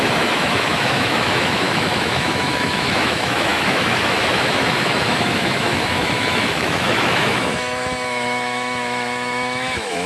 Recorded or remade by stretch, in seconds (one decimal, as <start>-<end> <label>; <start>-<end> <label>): 0.0-10.1 remade